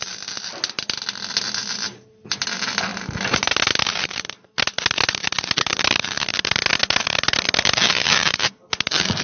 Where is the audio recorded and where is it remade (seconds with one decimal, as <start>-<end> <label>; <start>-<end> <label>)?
0.0-9.2 recorded

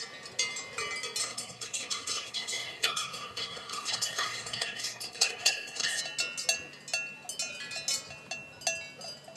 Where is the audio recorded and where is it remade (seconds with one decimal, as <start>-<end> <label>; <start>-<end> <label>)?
0.0-1.2 recorded; 1.2-6.0 remade; 6.0-9.4 recorded